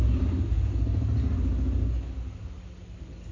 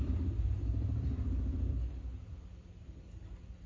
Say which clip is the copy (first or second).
second